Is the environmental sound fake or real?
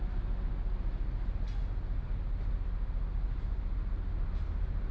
real